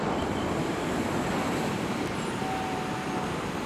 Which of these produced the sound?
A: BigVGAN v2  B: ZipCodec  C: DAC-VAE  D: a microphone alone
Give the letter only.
D